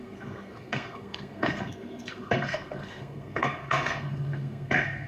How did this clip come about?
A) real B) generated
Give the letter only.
B